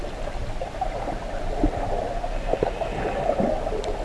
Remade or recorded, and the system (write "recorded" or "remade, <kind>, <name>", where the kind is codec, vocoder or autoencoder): recorded